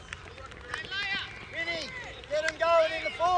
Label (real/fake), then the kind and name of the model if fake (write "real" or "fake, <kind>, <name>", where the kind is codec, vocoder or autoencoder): real